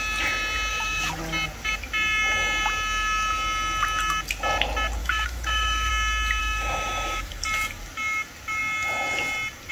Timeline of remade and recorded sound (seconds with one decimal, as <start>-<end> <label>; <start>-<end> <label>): 0.0-0.7 recorded; 0.7-1.2 remade; 1.2-5.0 recorded; 5.0-5.9 remade; 5.9-6.4 recorded; 6.4-7.3 remade; 7.3-9.7 recorded